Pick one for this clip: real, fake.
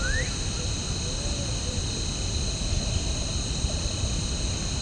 real